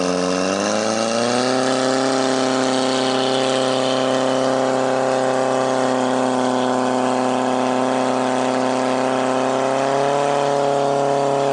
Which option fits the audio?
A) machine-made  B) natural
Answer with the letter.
B